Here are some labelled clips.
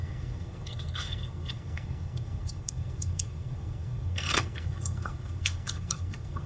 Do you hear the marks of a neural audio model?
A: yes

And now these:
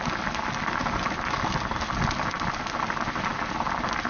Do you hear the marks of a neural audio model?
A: no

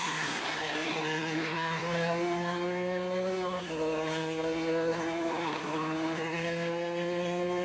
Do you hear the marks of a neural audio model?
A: yes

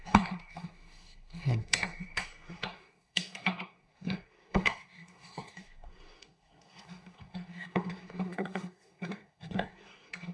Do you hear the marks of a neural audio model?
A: yes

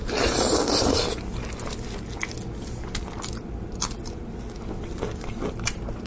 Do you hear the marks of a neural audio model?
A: no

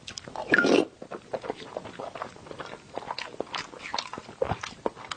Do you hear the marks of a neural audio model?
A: no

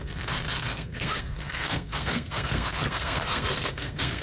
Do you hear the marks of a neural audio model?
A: yes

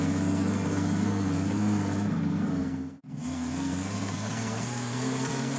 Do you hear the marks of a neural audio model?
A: yes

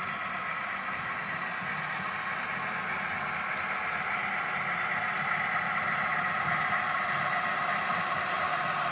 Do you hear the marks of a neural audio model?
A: no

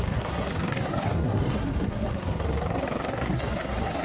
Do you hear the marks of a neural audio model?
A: yes